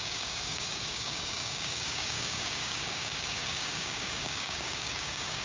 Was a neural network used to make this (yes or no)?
yes